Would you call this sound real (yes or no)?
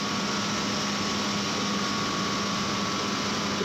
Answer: yes